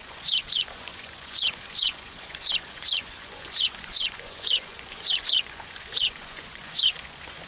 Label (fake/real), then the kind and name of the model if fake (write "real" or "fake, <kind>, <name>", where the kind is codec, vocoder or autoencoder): fake, vocoder, Vocos